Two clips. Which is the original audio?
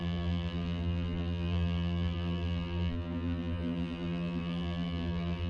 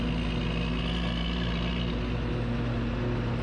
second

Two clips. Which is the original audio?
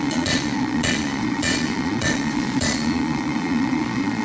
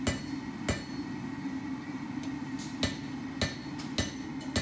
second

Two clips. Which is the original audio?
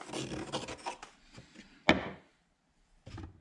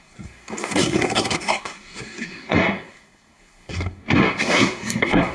first